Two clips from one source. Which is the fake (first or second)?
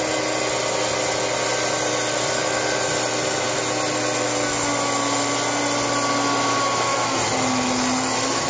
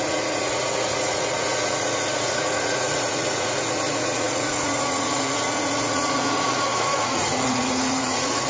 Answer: second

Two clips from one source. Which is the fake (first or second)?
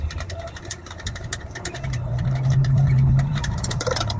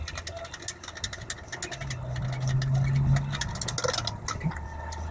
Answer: first